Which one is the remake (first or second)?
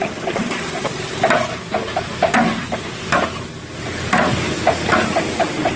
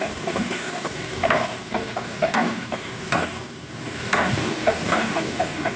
second